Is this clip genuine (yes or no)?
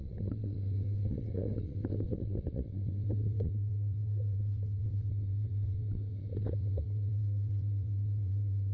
no